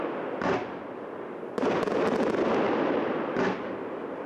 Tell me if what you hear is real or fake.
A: real